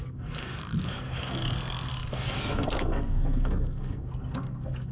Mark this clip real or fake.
fake